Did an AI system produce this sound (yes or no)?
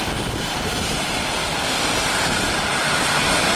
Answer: yes